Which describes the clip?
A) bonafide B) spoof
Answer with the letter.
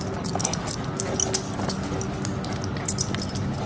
A